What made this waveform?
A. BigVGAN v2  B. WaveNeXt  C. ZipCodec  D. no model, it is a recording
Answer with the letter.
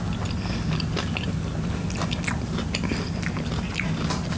D